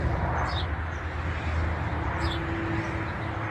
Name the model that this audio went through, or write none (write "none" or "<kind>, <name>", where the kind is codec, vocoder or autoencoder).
none